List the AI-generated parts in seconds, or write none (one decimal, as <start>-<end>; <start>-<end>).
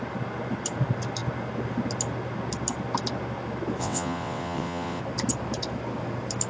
3.8-5.0